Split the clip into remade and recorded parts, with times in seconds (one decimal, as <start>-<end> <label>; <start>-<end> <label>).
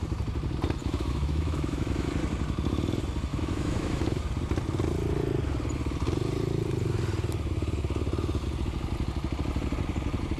0.0-0.8 recorded; 0.8-2.1 remade; 2.1-3.3 recorded; 3.3-4.2 remade; 4.2-10.4 recorded